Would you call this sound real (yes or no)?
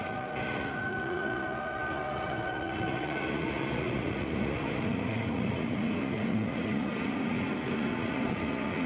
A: no